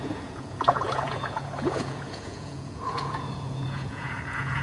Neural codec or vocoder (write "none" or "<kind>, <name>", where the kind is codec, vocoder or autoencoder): vocoder, Vocos